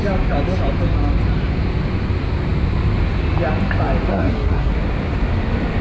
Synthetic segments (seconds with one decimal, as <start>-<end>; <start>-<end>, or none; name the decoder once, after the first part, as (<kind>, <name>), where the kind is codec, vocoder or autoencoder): 4.1-4.7 (codec, SNAC)